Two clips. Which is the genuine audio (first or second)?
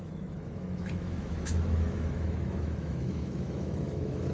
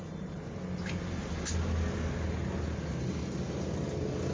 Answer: second